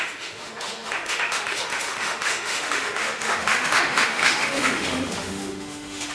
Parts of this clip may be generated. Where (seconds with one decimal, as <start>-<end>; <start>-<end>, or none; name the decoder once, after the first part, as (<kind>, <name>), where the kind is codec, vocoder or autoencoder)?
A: 0.0-6.1 (autoencoder, DAC-VAE)